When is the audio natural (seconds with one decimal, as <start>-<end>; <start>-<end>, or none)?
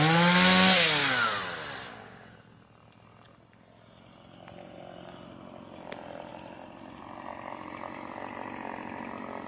0.0-1.0; 2.0-6.3; 7.0-9.5